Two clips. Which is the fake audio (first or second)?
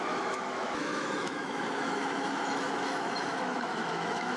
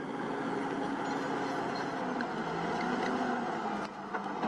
first